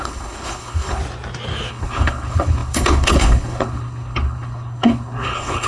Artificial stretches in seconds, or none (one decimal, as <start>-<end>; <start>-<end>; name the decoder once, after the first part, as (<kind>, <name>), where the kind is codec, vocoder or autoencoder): 0.0-1.0 (codec, HILCodec); 1.7-5.7